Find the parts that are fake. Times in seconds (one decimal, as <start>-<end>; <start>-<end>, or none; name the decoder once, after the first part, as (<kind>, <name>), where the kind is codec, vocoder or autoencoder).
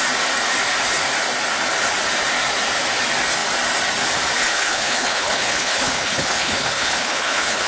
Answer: 4.5-7.7 (codec, HILCodec)